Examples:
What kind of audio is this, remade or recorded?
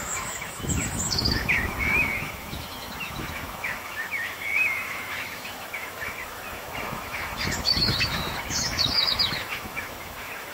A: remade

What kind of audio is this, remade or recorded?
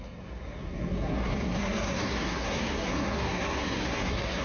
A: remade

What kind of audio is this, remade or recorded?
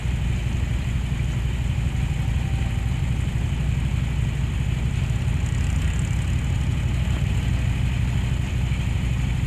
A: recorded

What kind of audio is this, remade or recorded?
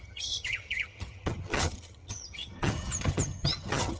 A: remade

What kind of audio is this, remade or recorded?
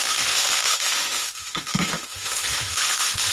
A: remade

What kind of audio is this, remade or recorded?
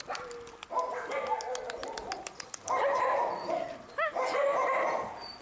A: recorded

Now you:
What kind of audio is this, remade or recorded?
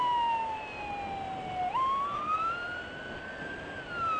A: recorded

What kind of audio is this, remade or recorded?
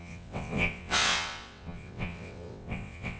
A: remade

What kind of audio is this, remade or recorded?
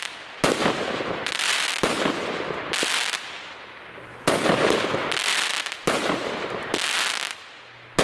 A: recorded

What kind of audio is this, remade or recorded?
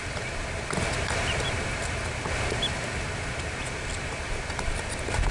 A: recorded